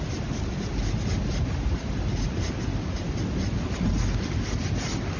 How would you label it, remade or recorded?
recorded